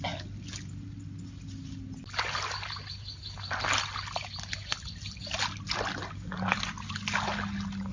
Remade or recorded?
recorded